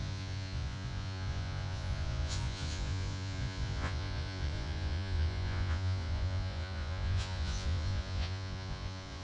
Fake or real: fake